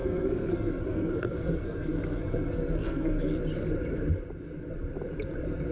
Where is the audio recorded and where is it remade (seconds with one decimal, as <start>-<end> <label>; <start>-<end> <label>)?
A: 0.0-3.4 remade; 3.4-5.7 recorded

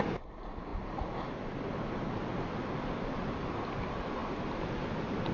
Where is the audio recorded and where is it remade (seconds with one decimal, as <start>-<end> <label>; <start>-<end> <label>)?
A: 0.0-5.3 recorded

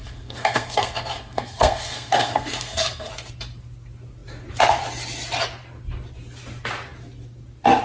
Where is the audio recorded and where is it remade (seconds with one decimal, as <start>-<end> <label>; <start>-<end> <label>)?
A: 0.0-3.1 remade; 3.1-7.8 recorded

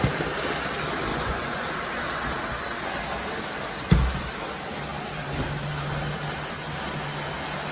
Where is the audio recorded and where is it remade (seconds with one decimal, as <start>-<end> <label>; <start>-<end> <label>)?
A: 0.0-1.1 recorded; 1.1-1.7 remade; 1.7-7.7 recorded

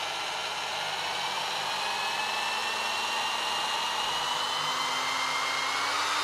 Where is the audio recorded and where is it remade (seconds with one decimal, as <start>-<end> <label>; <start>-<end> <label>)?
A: 0.0-0.4 recorded; 0.4-1.4 remade; 1.4-6.2 recorded

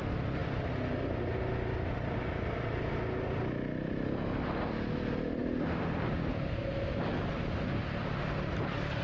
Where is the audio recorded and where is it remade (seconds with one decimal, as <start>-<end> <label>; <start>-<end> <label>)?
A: 0.0-9.0 recorded

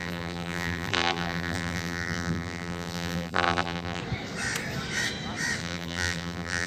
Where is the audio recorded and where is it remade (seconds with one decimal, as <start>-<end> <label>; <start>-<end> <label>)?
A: 0.0-4.0 remade; 4.0-5.6 recorded; 5.6-6.7 remade